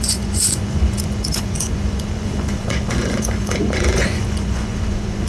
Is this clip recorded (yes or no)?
no